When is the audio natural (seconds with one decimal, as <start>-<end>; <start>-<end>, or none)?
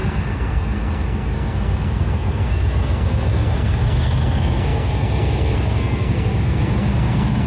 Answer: none